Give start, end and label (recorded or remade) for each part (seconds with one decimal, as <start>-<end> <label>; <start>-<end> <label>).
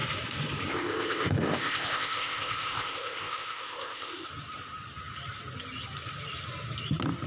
0.0-0.7 recorded; 0.7-4.3 remade; 4.3-7.3 recorded